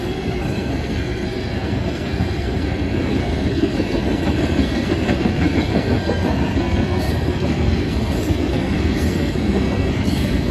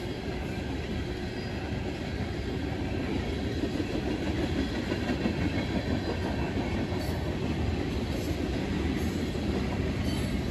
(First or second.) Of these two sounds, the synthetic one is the first